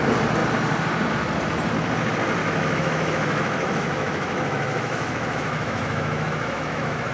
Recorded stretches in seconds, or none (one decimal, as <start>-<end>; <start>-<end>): 0.0-2.4